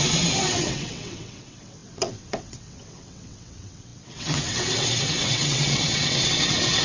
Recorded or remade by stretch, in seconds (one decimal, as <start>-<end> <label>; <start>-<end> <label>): 0.0-6.8 remade